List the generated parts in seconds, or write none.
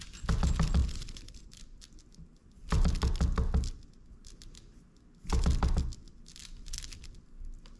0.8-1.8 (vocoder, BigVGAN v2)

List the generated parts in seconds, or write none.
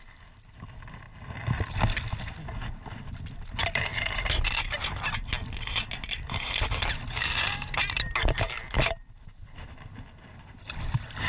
none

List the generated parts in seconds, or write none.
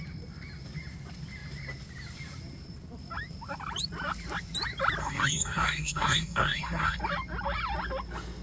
5.0-7.0 (codec, SNAC)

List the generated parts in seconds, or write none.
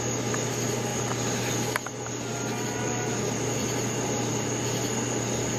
none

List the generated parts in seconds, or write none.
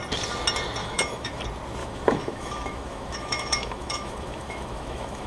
0.8-1.4 (autoencoder, DAC-VAE); 1.8-5.3